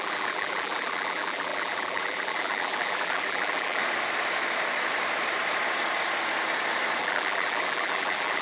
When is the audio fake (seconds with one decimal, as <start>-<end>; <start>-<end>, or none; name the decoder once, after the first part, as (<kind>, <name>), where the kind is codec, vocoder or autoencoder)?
0.0-3.8 (vocoder, BigVGAN v2); 7.0-8.4